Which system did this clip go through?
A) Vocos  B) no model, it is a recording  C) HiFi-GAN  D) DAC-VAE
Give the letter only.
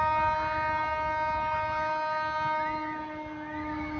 B